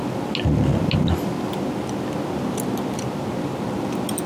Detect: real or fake real